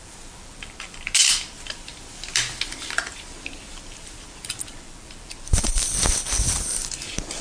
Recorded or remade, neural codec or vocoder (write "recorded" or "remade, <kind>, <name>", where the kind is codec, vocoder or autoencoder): recorded